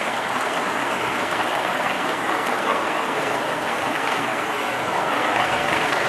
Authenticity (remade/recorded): remade